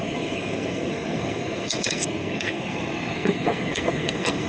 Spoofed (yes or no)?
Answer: yes